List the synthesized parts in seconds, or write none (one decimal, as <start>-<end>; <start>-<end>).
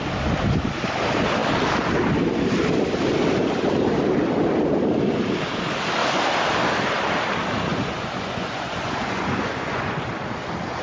7.7-10.1